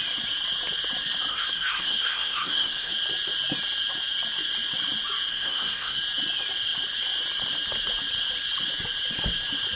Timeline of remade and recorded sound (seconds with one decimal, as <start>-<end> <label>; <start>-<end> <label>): 0.0-1.3 recorded; 1.3-2.9 remade; 2.9-5.3 recorded; 5.3-6.0 remade; 6.0-9.8 recorded